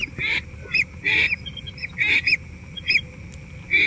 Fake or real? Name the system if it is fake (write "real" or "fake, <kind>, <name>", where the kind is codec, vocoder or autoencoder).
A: real